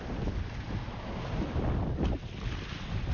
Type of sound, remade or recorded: recorded